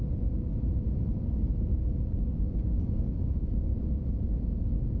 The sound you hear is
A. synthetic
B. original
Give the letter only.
B